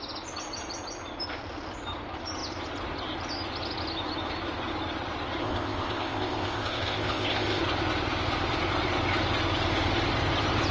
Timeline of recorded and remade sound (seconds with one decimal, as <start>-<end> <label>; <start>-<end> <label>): 0.0-5.4 recorded; 5.4-7.6 remade; 7.6-10.7 recorded